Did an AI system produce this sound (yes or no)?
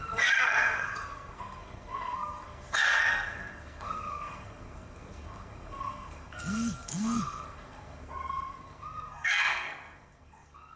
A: yes